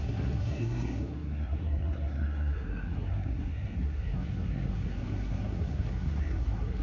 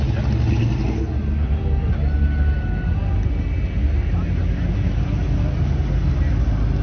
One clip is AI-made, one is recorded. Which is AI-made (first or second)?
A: first